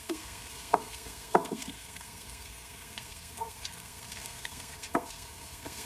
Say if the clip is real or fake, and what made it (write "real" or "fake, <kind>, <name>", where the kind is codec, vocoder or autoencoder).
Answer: fake, codec, SNAC